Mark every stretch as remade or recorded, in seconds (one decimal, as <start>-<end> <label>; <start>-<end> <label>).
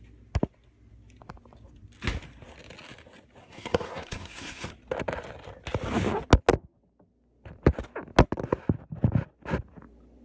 0.0-3.4 recorded; 3.4-4.7 remade; 4.7-10.2 recorded